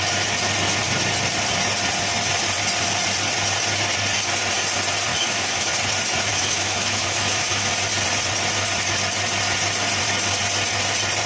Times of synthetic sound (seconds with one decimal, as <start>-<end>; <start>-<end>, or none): 5.1-5.7; 6.3-7.7